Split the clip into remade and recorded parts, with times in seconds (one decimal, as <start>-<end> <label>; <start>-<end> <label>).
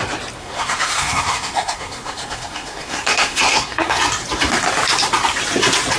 0.0-0.4 recorded; 0.4-4.0 remade; 4.0-6.0 recorded